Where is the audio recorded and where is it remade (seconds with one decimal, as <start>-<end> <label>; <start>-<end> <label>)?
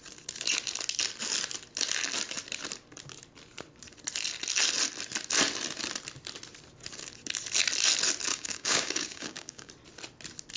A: 0.0-8.3 recorded; 8.3-9.7 remade; 9.7-10.6 recorded